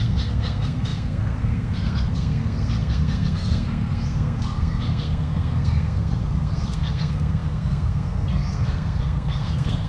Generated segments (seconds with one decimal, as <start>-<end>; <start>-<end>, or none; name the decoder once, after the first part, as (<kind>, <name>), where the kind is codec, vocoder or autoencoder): 0.0-9.9 (codec, SNAC)